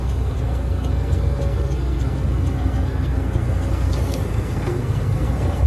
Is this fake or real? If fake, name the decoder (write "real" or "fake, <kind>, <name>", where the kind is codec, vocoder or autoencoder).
fake, codec, SNAC